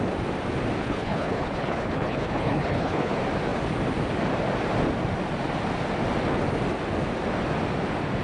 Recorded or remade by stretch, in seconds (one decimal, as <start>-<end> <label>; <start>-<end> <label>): 0.0-0.8 recorded; 0.8-3.1 remade; 3.1-8.2 recorded